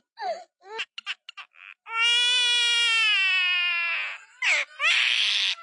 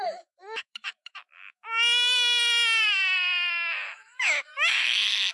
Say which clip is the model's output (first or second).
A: second